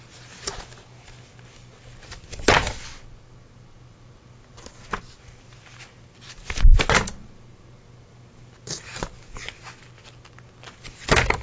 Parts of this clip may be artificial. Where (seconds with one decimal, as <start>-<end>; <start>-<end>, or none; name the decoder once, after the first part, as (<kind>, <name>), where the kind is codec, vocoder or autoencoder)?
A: 2.6-6.8 (vocoder, BigVGAN v2)

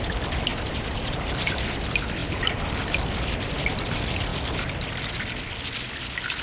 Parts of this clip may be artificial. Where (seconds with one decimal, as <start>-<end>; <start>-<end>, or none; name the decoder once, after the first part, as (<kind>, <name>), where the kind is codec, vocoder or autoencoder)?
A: 0.5-1.5 (vocoder, BigVGAN v2); 2.2-2.8

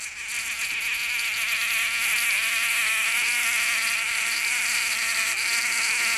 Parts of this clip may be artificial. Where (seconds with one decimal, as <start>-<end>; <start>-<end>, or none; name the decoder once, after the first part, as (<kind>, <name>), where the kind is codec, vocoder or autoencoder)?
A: 3.8-5.5 (vocoder, BigVGAN v2)